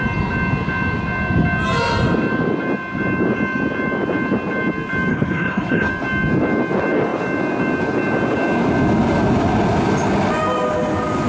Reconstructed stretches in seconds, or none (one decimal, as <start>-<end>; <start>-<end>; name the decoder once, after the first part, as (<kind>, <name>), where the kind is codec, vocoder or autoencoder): 5.1-5.9 (codec, HILCodec)